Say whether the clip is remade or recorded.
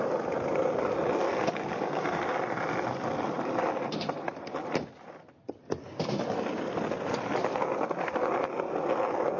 recorded